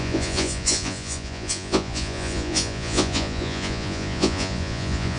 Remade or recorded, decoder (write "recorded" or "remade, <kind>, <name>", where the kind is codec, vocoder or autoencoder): remade, vocoder, Vocos